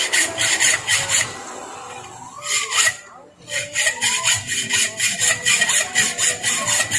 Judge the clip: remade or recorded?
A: recorded